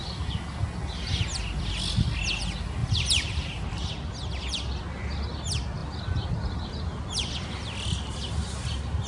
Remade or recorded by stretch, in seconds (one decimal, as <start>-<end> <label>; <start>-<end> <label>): 0.0-2.8 recorded; 2.8-3.7 remade; 3.7-4.3 recorded; 4.3-5.3 remade; 5.3-5.8 recorded; 5.8-9.1 remade